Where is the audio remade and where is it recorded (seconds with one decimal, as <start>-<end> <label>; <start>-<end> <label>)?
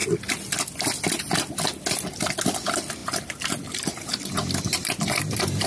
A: 0.0-5.7 recorded